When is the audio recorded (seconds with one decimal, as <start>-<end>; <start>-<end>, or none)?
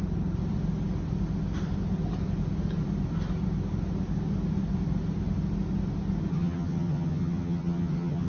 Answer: 0.0-6.3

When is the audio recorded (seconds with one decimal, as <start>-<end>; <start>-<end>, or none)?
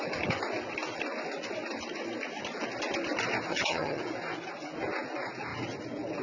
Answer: 0.0-3.5; 4.0-6.2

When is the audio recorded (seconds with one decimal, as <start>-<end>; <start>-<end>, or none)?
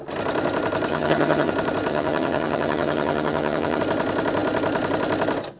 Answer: 0.0-0.9; 1.5-1.9; 3.8-5.6